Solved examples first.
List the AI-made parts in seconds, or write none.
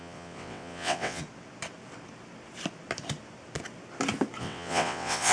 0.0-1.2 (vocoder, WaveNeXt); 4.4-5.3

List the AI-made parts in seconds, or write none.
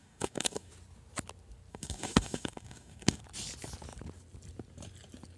0.0-0.7 (codec, DAC); 1.7-3.2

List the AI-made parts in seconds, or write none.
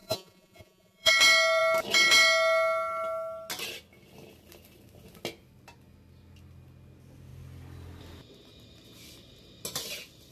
0.0-1.1 (vocoder, Vocos)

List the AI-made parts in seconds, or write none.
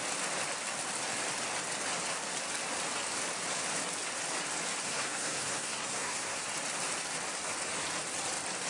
4.9-6.4 (codec, SNAC)